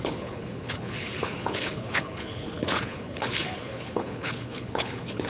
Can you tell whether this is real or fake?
fake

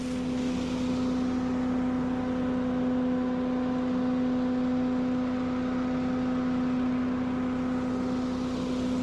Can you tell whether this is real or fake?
real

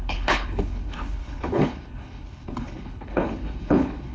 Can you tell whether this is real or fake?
fake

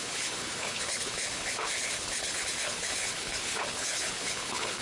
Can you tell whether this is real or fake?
fake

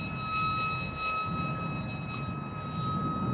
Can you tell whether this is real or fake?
real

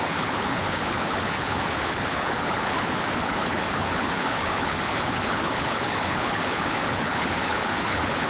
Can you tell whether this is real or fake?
fake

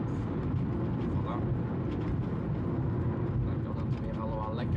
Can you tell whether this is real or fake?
real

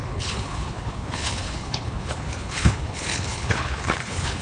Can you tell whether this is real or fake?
fake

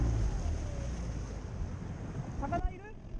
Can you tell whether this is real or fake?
real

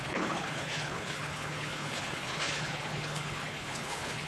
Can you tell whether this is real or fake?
fake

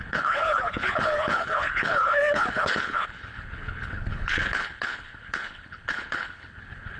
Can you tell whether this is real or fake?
fake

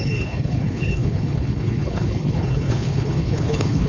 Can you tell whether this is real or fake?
fake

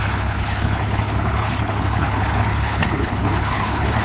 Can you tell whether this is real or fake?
fake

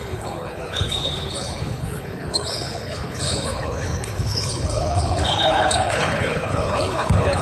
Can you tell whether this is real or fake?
fake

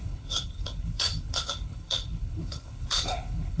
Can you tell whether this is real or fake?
fake